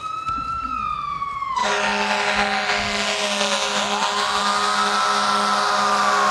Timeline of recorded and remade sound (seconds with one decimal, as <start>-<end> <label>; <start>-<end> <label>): 0.0-6.3 recorded

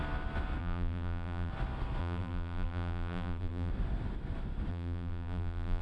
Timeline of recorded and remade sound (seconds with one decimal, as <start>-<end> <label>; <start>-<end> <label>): 0.0-0.6 recorded; 0.6-1.5 remade; 1.5-2.0 recorded; 2.0-3.7 remade; 3.7-4.7 recorded; 4.7-5.8 remade

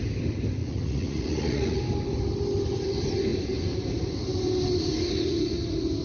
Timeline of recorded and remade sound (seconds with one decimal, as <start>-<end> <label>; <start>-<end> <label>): 0.0-0.6 recorded; 0.6-1.8 remade; 1.8-6.0 recorded

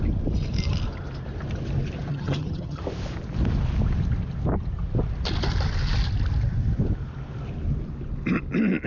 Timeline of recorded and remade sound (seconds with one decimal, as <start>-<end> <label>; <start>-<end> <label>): 0.0-2.1 recorded; 2.1-2.8 remade; 2.8-8.9 recorded